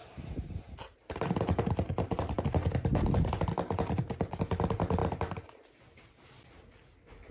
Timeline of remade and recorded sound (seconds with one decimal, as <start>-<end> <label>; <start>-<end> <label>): 0.0-2.4 remade; 2.4-5.0 recorded; 5.0-6.1 remade; 6.1-7.3 recorded